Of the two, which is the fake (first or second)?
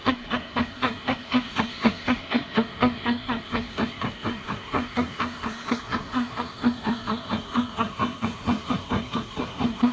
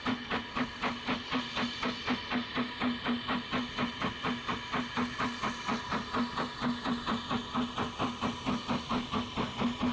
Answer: first